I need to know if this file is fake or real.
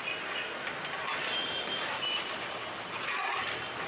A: real